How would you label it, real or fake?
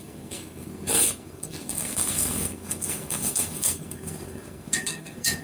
fake